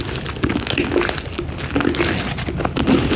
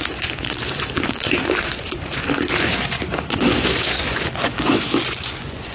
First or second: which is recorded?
first